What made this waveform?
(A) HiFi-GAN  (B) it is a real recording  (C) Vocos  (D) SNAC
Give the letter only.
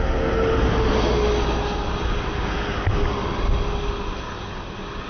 B